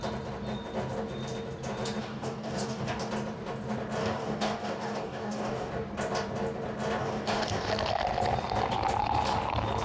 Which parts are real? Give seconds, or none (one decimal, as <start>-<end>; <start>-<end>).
0.0-2.0; 3.1-4.0; 5.7-7.0; 7.7-9.8